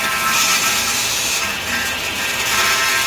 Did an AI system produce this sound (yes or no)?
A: no